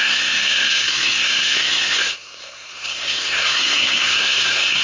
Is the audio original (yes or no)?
no